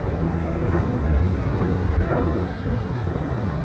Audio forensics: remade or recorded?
remade